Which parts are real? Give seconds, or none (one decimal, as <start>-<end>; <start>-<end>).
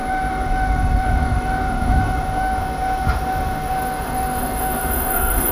none